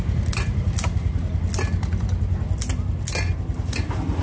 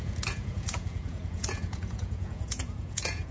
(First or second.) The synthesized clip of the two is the second